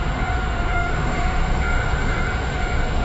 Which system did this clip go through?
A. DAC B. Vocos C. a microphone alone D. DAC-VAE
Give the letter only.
D